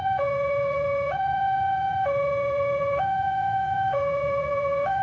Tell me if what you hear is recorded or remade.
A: remade